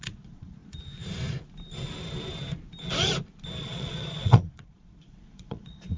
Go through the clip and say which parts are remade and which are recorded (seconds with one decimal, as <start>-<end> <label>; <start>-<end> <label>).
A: 0.0-0.6 remade; 0.6-3.6 recorded; 3.6-6.0 remade